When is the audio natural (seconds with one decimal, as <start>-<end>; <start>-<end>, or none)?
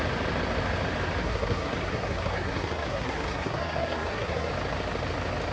0.0-1.2; 4.5-5.5